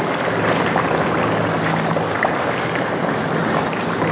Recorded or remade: recorded